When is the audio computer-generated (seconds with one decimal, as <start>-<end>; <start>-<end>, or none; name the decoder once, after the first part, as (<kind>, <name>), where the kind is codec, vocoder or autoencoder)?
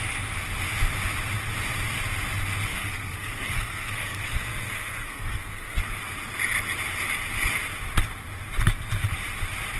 2.7-5.9 (codec, SNAC)